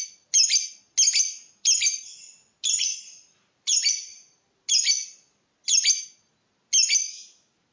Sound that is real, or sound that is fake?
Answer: real